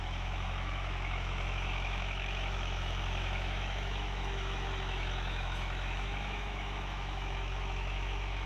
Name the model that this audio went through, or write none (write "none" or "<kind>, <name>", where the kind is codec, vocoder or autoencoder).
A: autoencoder, DAC-VAE